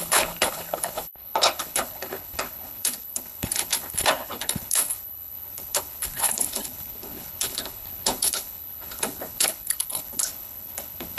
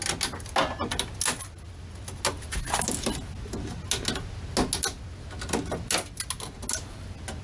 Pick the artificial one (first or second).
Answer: first